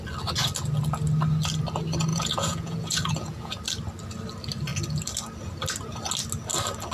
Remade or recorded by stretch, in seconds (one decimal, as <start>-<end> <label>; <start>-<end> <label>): 0.0-2.1 recorded; 2.1-3.6 remade; 3.6-6.9 recorded